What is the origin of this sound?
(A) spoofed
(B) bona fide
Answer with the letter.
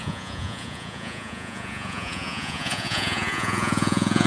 A